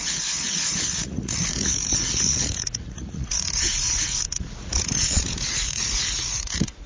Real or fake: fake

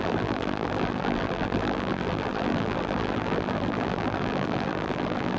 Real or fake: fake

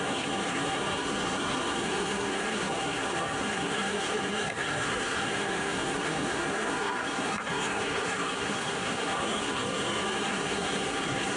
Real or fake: fake